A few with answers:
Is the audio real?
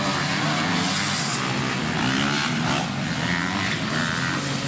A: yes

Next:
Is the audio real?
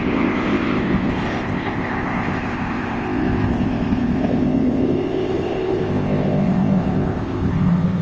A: no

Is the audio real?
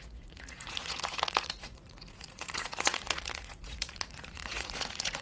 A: no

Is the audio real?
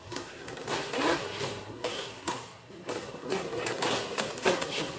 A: no